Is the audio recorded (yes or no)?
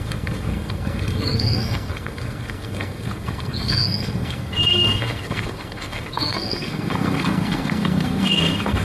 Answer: no